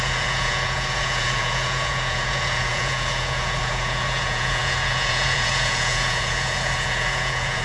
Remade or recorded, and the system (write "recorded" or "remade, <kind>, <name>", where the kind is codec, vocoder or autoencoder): remade, vocoder, Vocos